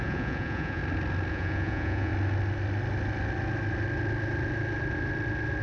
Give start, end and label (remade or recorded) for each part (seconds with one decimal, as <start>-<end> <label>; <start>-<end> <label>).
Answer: 0.0-0.8 remade; 0.8-1.3 recorded; 1.3-2.1 remade; 2.1-5.6 recorded